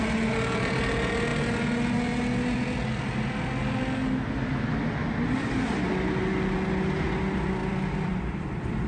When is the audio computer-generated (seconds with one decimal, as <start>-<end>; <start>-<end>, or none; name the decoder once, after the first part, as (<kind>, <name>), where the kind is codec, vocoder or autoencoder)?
7.6-8.9 (vocoder, BigVGAN v2)